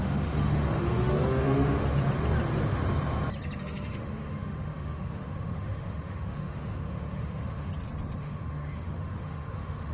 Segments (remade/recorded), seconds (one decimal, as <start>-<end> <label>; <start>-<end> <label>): 0.0-1.8 remade; 1.8-3.6 recorded; 3.6-7.7 remade; 7.7-8.2 recorded; 8.2-9.9 remade